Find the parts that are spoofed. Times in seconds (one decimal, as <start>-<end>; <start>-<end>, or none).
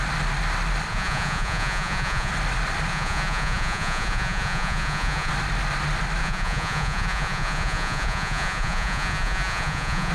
0.9-2.3; 2.9-5.3; 6.2-10.1